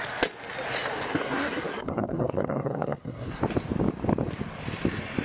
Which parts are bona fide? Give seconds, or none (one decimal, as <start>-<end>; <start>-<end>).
0.0-1.1; 3.4-5.2

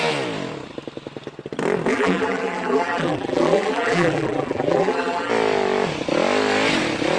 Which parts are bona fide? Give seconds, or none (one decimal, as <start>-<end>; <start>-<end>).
0.0-1.9; 5.3-7.2

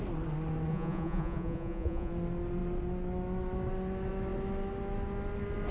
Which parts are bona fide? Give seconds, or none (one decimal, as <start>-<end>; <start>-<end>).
0.0-0.7; 2.1-5.7

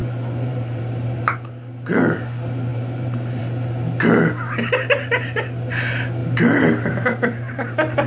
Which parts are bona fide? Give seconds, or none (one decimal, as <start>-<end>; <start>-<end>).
1.2-2.7; 3.4-6.2

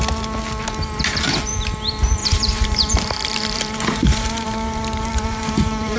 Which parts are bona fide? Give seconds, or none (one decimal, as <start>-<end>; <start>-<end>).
0.0-2.2

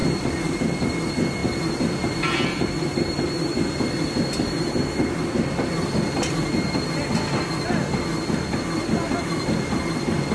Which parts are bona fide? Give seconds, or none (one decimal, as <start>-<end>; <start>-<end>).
0.0-10.3

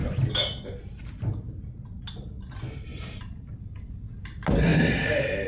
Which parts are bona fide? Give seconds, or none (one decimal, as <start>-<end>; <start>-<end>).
0.0-2.9; 3.6-4.7